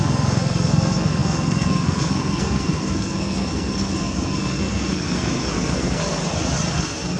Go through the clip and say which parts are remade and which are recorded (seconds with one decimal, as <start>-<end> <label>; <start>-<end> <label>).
0.0-6.2 remade; 6.2-6.8 recorded; 6.8-7.2 remade